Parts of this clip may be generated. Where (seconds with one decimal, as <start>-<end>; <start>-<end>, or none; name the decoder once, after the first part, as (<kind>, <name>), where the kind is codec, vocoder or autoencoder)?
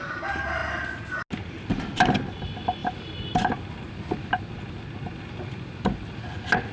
none